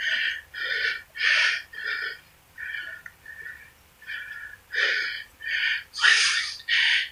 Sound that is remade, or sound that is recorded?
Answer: recorded